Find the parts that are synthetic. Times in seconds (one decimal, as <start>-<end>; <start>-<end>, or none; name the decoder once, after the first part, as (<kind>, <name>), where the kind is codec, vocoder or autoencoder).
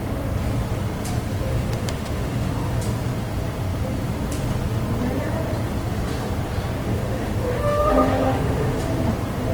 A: 1.5-2.8 (autoencoder, DAC-VAE); 6.9-8.8